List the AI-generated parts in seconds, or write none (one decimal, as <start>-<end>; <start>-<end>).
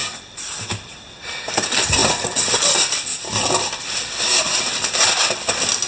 none